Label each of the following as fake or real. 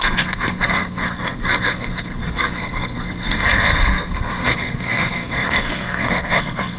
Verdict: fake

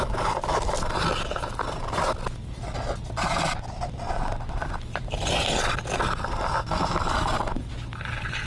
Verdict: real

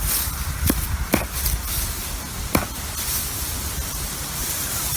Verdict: real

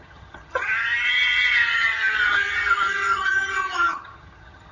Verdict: fake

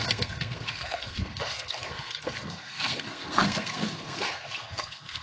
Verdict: fake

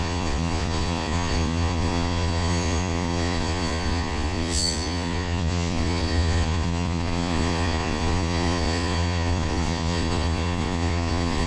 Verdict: fake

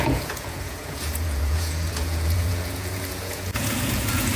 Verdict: fake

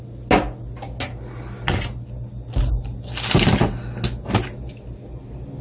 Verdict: real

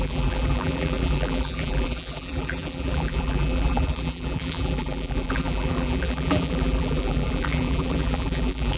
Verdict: fake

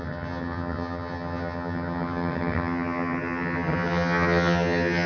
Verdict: fake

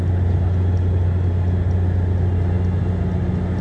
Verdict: real